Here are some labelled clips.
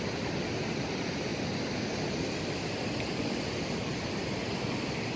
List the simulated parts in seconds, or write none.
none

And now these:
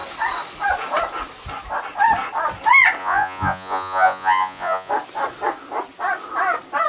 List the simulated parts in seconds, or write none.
3.0-4.9

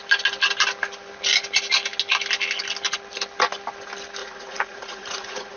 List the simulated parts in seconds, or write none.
4.2-5.6

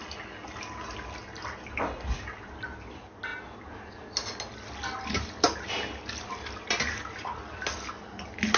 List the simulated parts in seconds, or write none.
none

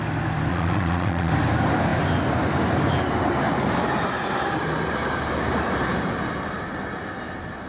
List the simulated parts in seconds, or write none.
0.5-1.3

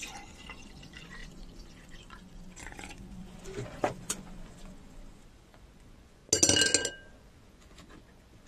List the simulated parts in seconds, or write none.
0.0-6.2; 7.1-8.5

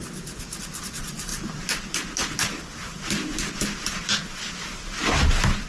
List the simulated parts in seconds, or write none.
none

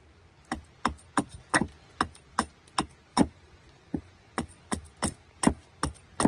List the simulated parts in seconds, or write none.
1.4-2.0; 3.1-5.0